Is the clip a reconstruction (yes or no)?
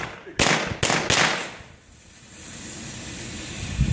no